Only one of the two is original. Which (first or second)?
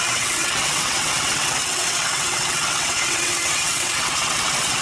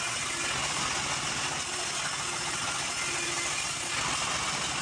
second